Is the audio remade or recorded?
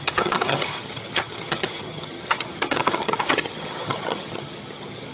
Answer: remade